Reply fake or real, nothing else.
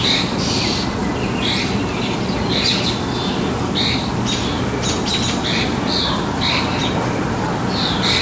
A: real